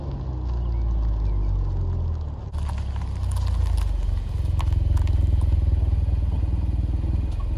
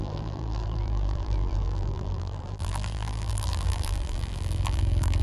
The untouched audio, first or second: first